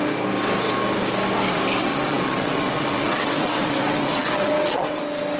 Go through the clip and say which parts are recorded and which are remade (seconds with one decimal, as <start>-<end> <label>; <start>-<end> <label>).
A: 0.0-1.8 recorded; 1.8-5.0 remade; 5.0-5.4 recorded

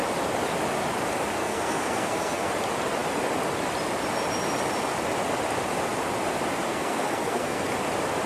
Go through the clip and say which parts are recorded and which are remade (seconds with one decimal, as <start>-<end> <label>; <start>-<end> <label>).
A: 0.0-1.4 recorded; 1.4-2.5 remade; 2.5-6.7 recorded; 6.7-7.7 remade; 7.7-8.3 recorded